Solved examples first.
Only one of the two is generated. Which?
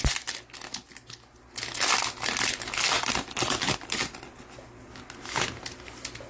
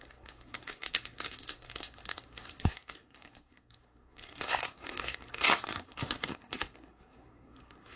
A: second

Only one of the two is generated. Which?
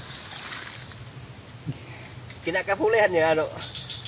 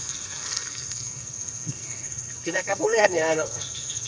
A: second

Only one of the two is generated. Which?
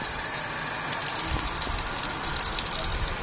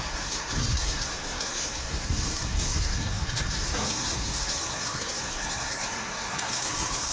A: second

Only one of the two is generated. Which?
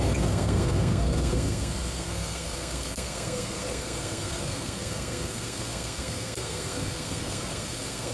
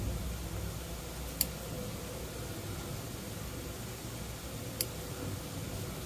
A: first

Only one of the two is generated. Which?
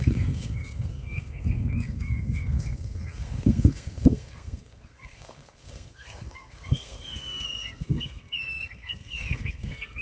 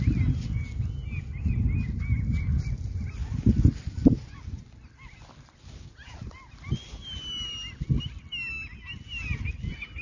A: first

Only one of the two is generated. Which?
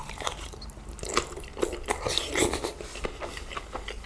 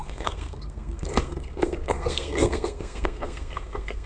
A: second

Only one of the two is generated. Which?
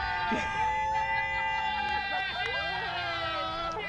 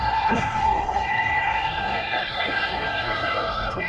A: second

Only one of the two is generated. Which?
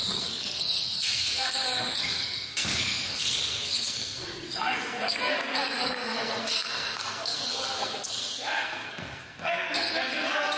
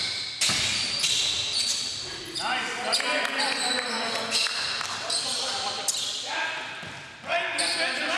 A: first